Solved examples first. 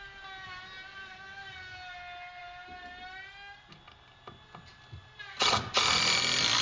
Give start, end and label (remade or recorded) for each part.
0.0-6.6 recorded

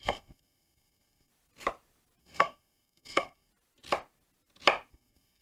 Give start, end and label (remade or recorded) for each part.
0.0-1.3 remade; 1.3-2.2 recorded; 2.2-3.5 remade; 3.5-4.9 recorded; 4.9-5.4 remade

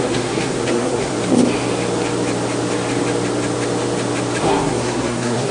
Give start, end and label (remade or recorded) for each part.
0.0-1.1 remade; 1.1-4.4 recorded; 4.4-5.5 remade

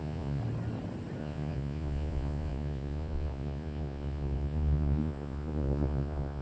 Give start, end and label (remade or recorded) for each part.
0.0-0.4 remade; 0.4-1.2 recorded; 1.2-6.4 remade

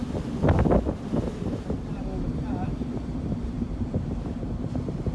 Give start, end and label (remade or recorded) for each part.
0.0-3.1 recorded; 3.1-5.1 remade